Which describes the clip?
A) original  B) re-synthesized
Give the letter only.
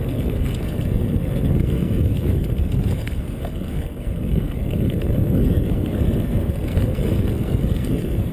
B